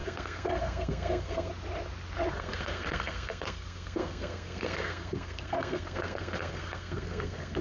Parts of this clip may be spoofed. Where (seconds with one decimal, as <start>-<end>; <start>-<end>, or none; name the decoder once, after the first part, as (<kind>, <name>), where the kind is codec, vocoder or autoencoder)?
0.0-1.5 (codec, SNAC); 2.3-7.6